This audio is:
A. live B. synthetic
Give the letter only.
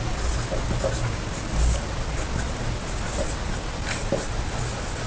A